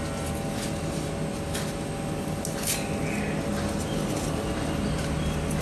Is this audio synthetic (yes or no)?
no